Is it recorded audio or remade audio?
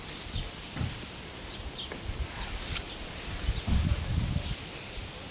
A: recorded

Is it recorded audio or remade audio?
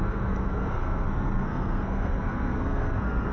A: remade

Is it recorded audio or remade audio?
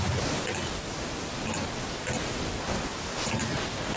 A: recorded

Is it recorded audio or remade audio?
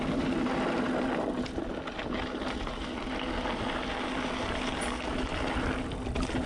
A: recorded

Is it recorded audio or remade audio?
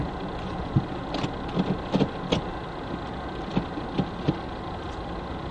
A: recorded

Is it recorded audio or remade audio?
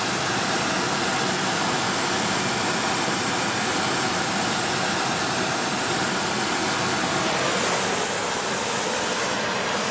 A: recorded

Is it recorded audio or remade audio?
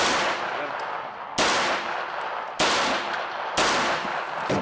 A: recorded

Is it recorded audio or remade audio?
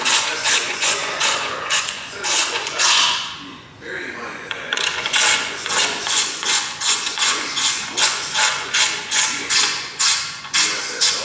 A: remade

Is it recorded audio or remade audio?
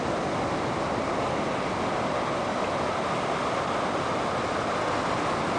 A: recorded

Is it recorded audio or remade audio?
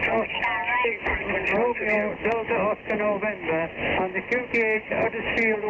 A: recorded